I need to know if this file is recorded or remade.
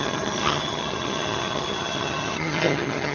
remade